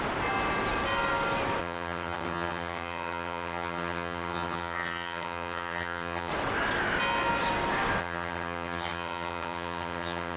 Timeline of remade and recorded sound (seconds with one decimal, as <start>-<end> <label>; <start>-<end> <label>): 0.0-1.6 recorded; 1.6-6.3 remade; 6.3-8.0 recorded; 8.0-10.4 remade